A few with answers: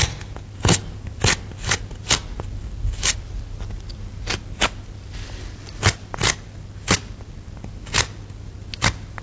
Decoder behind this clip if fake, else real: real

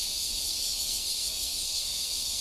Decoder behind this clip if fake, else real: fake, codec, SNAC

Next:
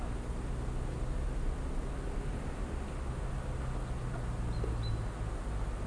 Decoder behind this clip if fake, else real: real